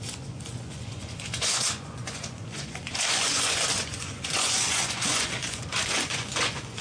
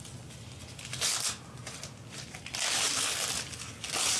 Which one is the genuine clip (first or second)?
second